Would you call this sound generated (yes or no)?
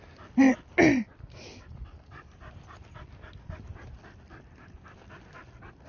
no